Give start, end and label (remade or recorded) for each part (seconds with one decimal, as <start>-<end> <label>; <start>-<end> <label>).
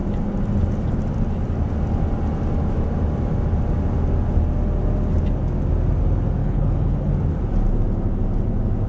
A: 0.0-6.4 recorded; 6.4-7.1 remade; 7.1-8.9 recorded